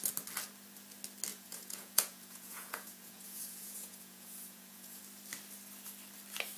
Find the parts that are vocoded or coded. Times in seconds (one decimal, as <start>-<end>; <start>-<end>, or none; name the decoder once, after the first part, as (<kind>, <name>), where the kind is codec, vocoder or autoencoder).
1.3-5.0 (vocoder, Vocos)